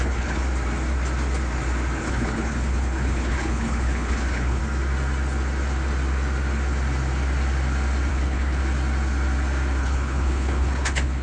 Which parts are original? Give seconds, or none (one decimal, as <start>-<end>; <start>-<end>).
0.4-2.0; 4.6-8.1; 8.6-9.8